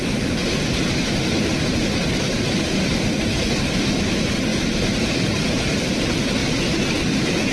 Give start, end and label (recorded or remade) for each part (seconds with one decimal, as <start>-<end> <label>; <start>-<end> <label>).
0.0-7.5 recorded

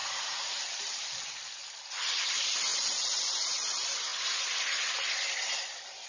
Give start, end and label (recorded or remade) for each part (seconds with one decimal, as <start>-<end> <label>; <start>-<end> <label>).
0.0-1.5 remade; 1.5-2.7 recorded; 2.7-3.5 remade; 3.5-6.1 recorded

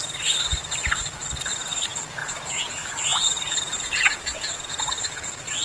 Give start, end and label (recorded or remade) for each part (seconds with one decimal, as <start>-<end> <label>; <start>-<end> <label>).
0.0-2.2 recorded; 2.2-2.7 remade; 2.7-3.1 recorded; 3.1-4.8 remade; 4.8-5.6 recorded

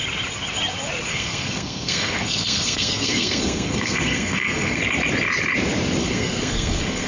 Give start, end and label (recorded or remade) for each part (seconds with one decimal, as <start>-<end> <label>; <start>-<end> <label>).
0.0-1.1 recorded; 1.1-4.8 remade; 4.8-6.0 recorded; 6.0-7.1 remade

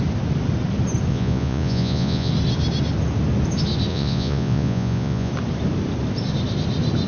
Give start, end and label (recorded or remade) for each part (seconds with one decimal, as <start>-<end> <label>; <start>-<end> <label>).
0.0-1.1 recorded; 1.1-2.3 remade; 2.3-3.9 recorded; 3.9-5.3 remade; 5.3-7.1 recorded

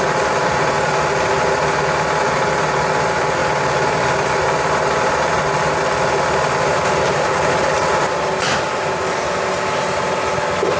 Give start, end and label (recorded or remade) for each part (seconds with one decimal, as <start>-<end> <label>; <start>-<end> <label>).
0.0-10.8 recorded